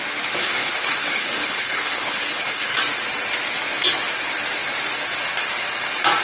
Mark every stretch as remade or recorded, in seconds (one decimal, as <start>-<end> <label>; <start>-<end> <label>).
0.0-0.4 recorded; 0.4-2.8 remade; 2.8-6.2 recorded